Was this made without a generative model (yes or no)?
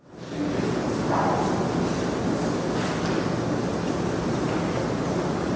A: yes